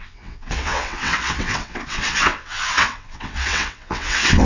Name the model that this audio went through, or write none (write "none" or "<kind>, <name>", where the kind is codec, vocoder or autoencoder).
vocoder, WaveNeXt